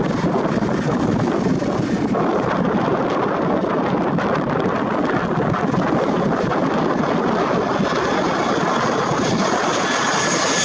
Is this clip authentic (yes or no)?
yes